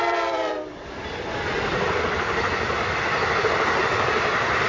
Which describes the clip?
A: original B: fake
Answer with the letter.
B